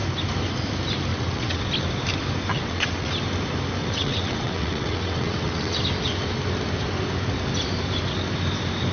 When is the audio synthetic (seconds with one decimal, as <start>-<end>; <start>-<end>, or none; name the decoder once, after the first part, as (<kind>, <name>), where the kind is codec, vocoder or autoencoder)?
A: 1.1-1.6 (vocoder, WaveNeXt); 2.5-3.1; 3.8-5.8